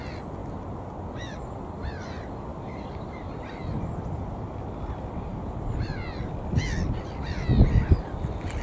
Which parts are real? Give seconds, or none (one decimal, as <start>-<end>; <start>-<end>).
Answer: 0.0-8.6